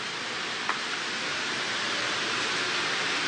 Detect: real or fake fake